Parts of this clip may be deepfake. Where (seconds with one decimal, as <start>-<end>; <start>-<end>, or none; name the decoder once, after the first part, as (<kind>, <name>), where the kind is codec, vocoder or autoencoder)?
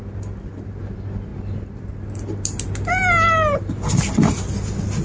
none